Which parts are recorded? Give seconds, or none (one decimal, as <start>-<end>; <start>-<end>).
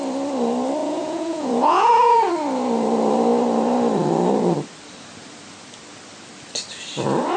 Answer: 0.0-0.8; 2.3-7.4